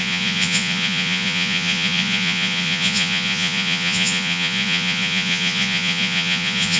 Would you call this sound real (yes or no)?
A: no